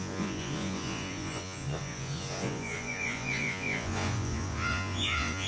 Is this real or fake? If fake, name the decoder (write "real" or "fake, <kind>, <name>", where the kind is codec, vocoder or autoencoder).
fake, vocoder, Vocos